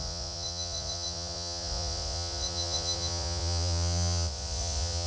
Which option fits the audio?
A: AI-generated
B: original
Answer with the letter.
A